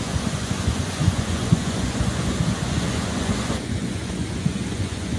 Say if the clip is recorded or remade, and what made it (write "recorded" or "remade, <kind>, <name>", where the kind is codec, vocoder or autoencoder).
remade, vocoder, Vocos